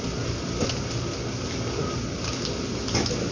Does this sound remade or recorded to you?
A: recorded